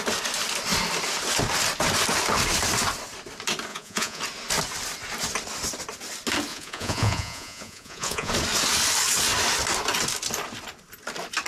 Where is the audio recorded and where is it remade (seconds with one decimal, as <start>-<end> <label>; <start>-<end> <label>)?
0.0-3.7 recorded; 3.7-4.2 remade; 4.2-6.5 recorded; 6.5-8.3 remade; 8.3-11.5 recorded